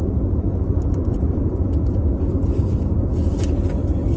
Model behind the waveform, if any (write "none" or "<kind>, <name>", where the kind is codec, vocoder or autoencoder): none